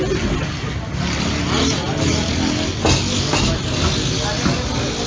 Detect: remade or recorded recorded